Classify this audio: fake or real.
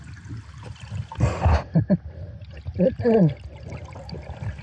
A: real